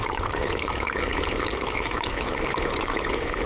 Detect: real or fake fake